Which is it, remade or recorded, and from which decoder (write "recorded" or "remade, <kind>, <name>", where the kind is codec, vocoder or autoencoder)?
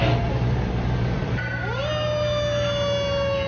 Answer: recorded